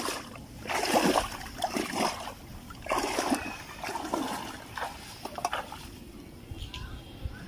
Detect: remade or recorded recorded